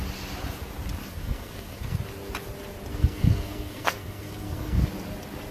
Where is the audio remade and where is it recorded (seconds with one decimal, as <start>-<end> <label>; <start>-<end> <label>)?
0.0-1.0 recorded; 1.0-2.0 remade; 2.0-2.9 recorded; 2.9-4.8 remade; 4.8-5.5 recorded